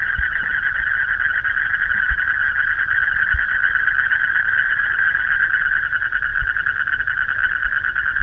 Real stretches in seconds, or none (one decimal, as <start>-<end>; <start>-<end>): 0.0-2.4; 3.1-8.2